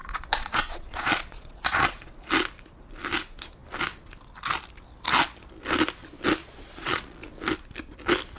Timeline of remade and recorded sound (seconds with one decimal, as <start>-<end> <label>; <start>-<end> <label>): 0.0-2.2 remade; 2.2-6.4 recorded; 6.4-7.3 remade; 7.3-8.4 recorded